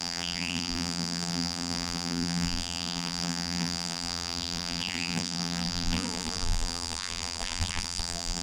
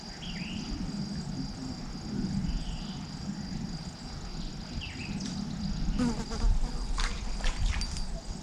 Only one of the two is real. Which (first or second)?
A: second